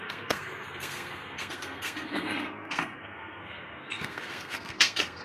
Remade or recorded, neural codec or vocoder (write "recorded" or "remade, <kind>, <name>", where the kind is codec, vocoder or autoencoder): remade, codec, SNAC